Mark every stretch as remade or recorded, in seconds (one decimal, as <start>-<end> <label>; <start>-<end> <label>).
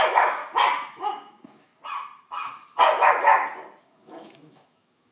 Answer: 0.0-0.4 remade; 0.4-0.9 recorded; 0.9-1.7 remade; 1.7-3.8 recorded; 3.8-5.1 remade